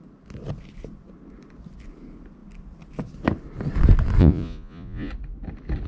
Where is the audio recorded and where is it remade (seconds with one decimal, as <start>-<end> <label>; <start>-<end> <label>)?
0.0-4.2 recorded; 4.2-5.1 remade; 5.1-5.9 recorded

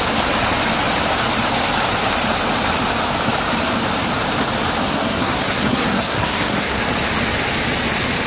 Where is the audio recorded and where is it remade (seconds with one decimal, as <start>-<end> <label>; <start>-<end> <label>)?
0.0-4.8 recorded; 4.8-6.8 remade; 6.8-8.3 recorded

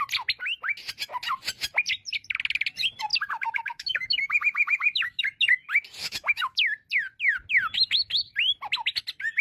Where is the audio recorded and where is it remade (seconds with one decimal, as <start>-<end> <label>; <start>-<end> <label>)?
0.0-3.1 recorded; 3.1-5.2 remade; 5.2-6.0 recorded; 6.0-6.7 remade; 6.7-9.4 recorded